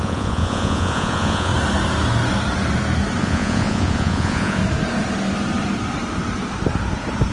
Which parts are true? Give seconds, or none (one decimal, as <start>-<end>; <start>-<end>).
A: 1.5-3.2; 4.6-7.3